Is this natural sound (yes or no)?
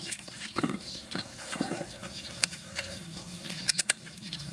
no